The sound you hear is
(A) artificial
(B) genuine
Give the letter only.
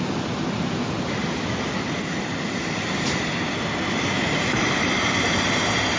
B